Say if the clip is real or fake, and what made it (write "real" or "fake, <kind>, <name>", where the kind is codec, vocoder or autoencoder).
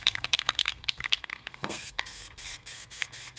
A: fake, codec, SNAC